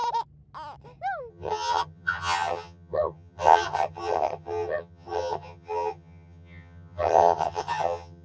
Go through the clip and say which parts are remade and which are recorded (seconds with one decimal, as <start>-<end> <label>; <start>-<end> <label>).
0.0-1.3 recorded; 1.3-8.2 remade